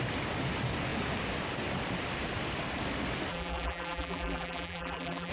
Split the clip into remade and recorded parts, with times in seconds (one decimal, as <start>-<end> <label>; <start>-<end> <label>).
0.0-3.3 recorded; 3.3-5.3 remade